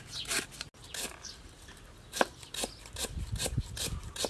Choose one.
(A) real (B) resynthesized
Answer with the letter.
A